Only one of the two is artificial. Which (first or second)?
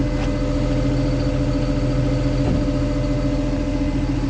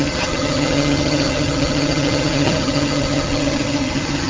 second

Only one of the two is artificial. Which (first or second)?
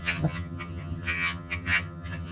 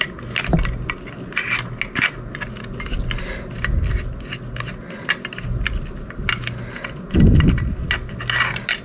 first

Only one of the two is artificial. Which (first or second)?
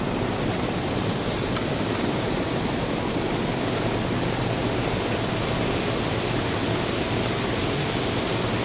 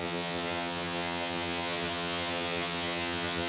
second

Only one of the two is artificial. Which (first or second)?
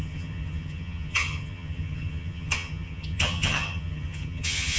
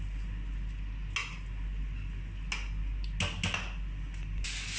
first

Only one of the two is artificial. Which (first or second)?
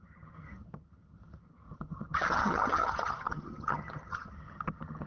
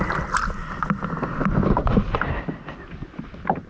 first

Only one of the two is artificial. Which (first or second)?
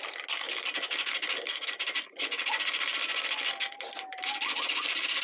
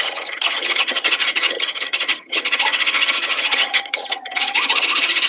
second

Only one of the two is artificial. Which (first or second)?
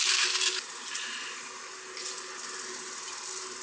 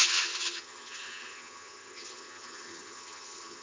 second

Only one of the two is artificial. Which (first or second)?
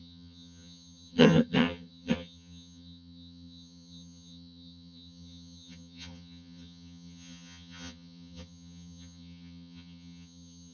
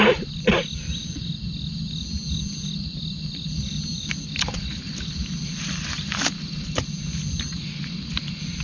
first